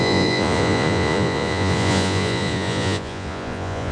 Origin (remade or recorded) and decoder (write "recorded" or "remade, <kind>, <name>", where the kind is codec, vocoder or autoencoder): remade, vocoder, Vocos